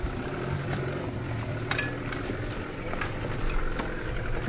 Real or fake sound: real